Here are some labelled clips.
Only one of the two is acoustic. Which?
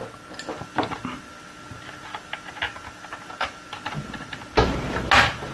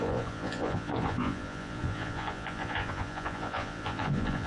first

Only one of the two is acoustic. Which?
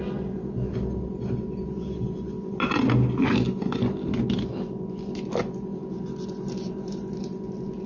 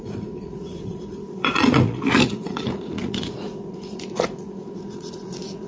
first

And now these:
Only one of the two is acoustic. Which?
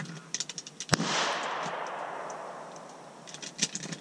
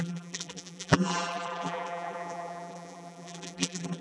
first